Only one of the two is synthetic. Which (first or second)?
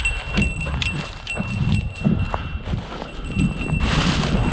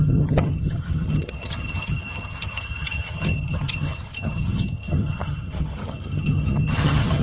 second